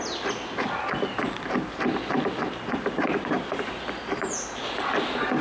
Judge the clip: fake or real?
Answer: real